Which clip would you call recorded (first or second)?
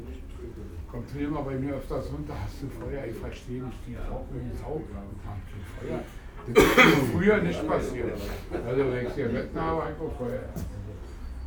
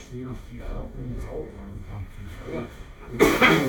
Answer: first